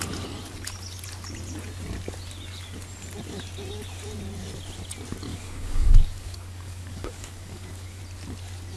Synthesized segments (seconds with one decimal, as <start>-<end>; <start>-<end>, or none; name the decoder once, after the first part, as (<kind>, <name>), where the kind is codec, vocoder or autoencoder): 5.3-8.0 (codec, DAC)